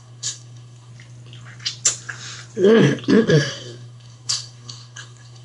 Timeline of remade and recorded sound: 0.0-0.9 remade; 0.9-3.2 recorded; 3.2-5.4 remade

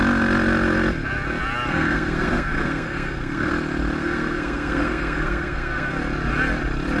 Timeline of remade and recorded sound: 0.0-1.7 recorded; 1.7-3.5 remade; 3.5-4.0 recorded; 4.0-5.9 remade; 5.9-7.0 recorded

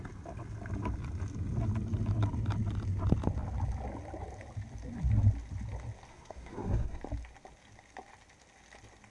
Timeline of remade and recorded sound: 0.0-6.1 recorded; 6.1-7.0 remade; 7.0-9.1 recorded

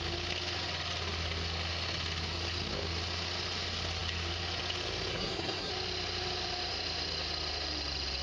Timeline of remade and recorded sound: 0.0-5.1 recorded; 5.1-5.7 remade; 5.7-8.2 recorded

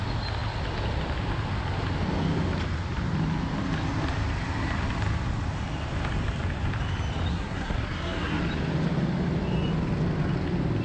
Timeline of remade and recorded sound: 0.0-7.3 recorded; 7.3-8.4 remade; 8.4-10.8 recorded

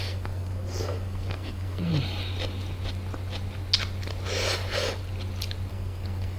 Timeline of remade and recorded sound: 0.0-1.9 remade; 1.9-5.7 recorded; 5.7-6.4 remade

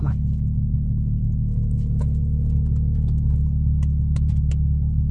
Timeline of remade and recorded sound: 0.0-5.1 recorded